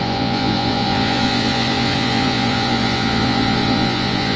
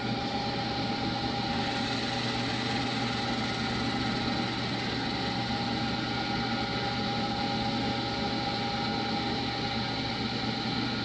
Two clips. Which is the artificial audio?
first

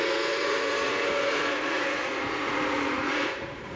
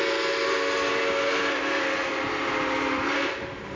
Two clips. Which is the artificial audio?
first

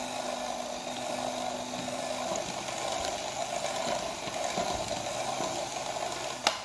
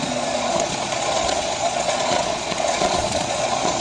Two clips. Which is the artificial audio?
second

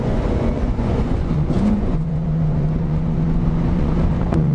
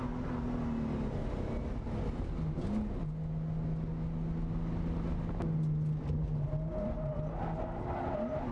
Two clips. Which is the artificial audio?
first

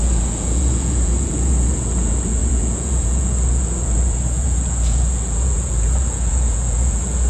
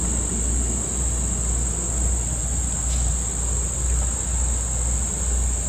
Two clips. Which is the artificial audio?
first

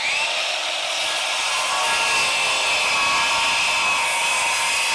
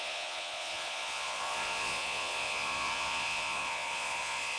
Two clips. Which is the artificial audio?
second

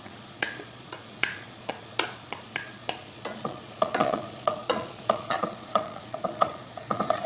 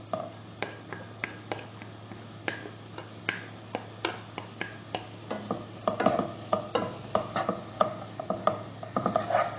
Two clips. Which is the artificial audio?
first